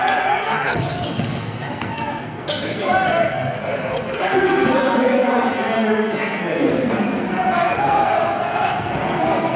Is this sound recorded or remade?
remade